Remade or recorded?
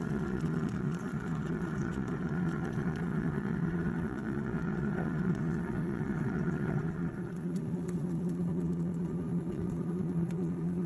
remade